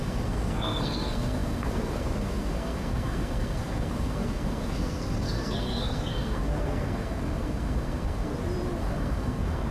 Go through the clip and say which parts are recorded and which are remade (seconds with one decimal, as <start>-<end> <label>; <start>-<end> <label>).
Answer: 0.0-8.3 remade; 8.3-8.8 recorded; 8.8-9.7 remade